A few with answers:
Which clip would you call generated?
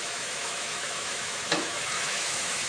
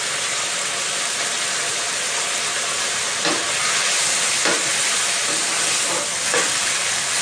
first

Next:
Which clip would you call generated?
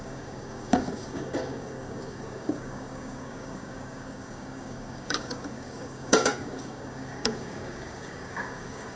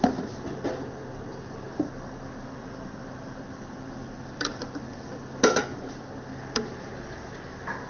first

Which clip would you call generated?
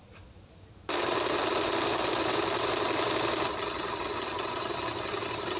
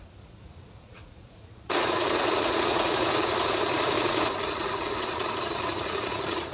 second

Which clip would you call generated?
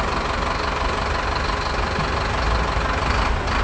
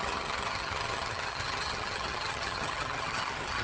second